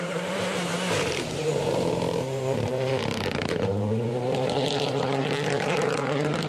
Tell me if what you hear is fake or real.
fake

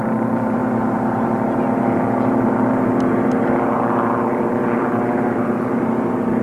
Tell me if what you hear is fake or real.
fake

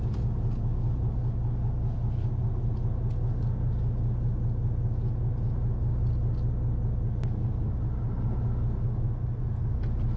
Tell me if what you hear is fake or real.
real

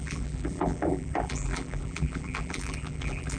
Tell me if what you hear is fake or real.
fake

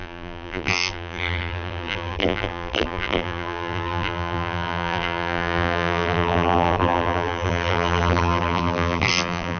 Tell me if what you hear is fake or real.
fake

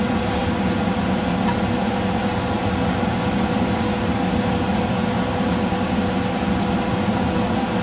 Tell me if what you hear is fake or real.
real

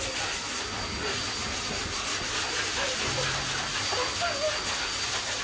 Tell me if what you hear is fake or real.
fake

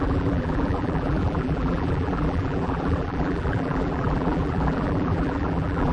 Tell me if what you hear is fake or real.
fake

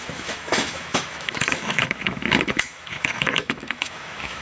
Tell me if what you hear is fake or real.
fake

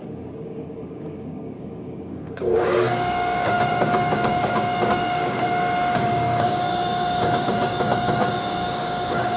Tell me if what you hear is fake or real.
fake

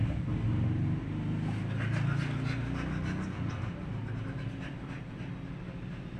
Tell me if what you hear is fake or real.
real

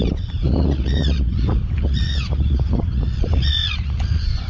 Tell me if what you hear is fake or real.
fake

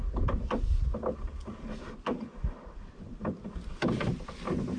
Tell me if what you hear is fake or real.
real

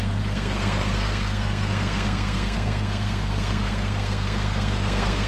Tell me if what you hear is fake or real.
fake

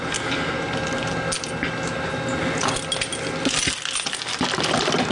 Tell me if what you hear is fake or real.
real